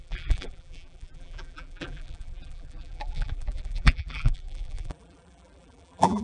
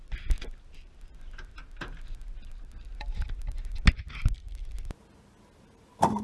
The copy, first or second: first